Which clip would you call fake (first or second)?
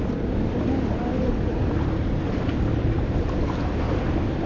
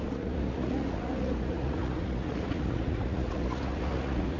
second